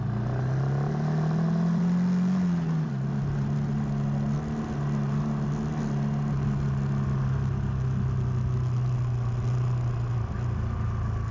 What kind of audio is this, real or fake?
real